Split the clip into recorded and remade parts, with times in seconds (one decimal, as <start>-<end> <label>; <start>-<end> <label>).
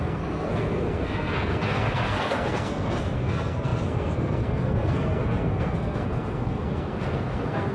0.0-7.7 remade